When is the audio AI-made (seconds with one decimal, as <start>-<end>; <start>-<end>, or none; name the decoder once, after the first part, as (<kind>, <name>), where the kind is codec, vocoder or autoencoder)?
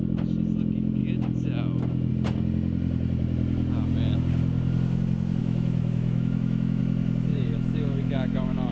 5.4-6.8 (autoencoder, DAC-VAE); 7.3-8.7